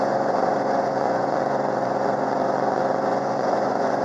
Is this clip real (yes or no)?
no